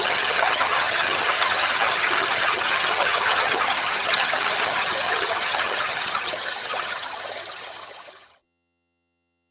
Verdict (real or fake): fake